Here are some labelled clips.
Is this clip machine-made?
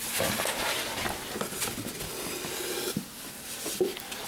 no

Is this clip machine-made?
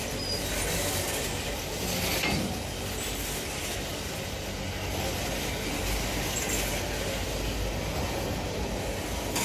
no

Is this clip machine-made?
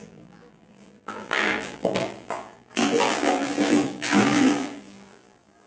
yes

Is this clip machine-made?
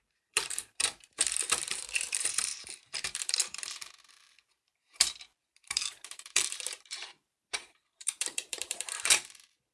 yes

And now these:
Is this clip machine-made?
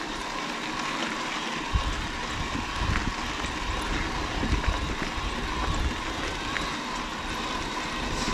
no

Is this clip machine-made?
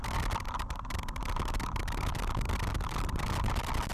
yes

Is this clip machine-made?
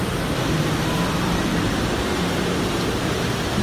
yes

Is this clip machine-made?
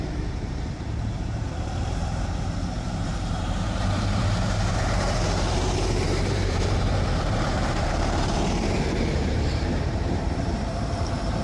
yes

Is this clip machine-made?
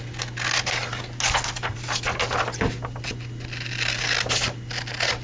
no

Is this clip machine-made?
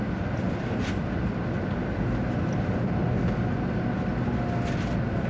no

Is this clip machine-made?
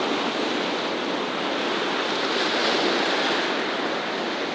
no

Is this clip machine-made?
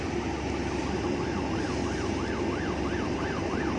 no